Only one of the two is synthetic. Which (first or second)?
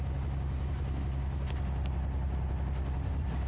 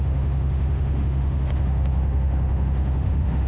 second